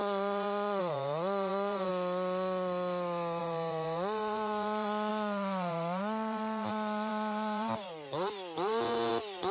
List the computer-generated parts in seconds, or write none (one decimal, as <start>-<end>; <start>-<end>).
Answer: 0.0-1.9; 3.4-9.5